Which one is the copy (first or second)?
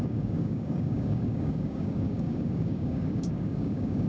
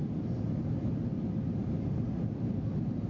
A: first